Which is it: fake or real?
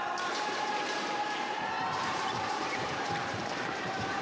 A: fake